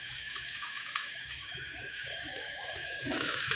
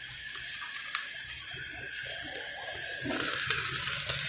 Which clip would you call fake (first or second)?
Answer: first